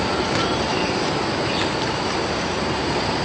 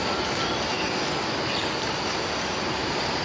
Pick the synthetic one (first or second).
first